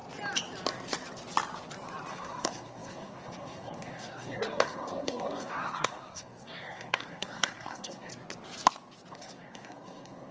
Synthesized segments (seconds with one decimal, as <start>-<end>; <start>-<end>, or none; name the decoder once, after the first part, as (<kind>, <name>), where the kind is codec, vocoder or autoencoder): 2.1-8.1 (codec, SNAC); 9.1-10.3